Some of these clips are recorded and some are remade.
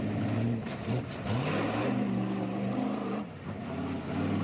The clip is recorded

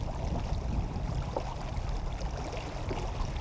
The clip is recorded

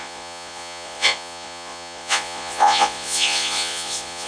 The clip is remade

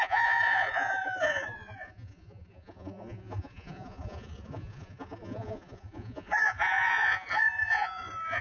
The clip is remade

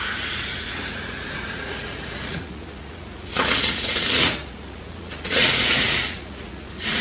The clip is remade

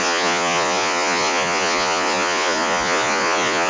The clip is remade